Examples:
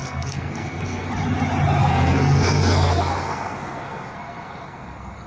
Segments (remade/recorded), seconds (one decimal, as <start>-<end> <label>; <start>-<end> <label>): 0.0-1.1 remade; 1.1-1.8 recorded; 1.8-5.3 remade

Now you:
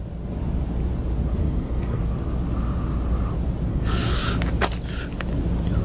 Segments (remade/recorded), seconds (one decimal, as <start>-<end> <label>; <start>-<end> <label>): 0.0-1.4 recorded; 1.4-2.0 remade; 2.0-3.7 recorded; 3.7-4.2 remade; 4.2-5.8 recorded

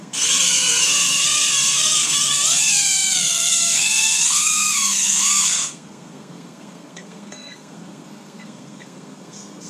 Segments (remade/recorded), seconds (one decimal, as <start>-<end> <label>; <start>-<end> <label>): 0.0-9.7 remade

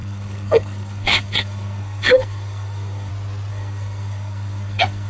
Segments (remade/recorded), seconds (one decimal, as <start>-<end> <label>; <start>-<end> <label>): 0.0-3.1 remade; 3.1-3.5 recorded; 3.5-5.1 remade

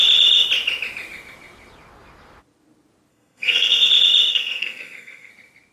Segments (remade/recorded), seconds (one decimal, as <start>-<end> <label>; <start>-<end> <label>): 0.0-3.1 recorded; 3.1-3.9 remade; 3.9-4.3 recorded; 4.3-5.3 remade; 5.3-5.7 recorded

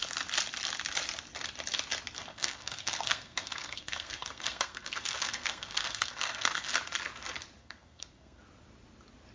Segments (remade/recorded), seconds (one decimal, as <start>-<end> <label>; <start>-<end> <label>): 0.0-2.3 recorded; 2.3-6.7 remade; 6.7-7.6 recorded; 7.6-8.4 remade; 8.4-9.3 recorded

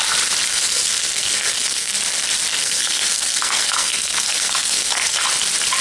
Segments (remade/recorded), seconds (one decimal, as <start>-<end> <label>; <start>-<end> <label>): 0.0-0.5 recorded; 0.5-2.0 remade; 2.0-2.6 recorded; 2.6-5.2 remade; 5.2-5.8 recorded